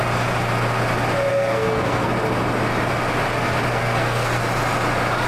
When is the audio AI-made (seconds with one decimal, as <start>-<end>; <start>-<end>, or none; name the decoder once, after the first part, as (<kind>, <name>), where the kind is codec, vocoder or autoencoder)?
1.3-2.1 (codec, SNAC); 3.7-4.4